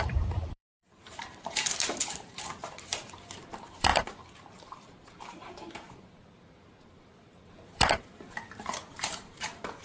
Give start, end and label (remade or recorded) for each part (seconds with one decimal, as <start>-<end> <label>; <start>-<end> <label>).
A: 0.0-9.8 remade